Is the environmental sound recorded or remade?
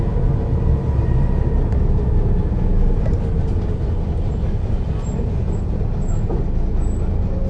recorded